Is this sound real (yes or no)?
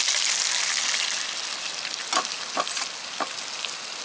yes